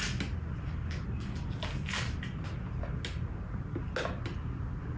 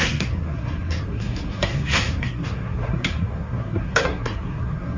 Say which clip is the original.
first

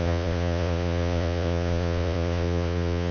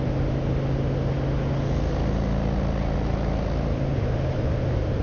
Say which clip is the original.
second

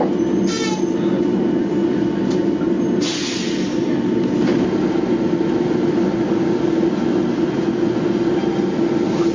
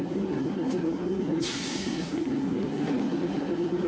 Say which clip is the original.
first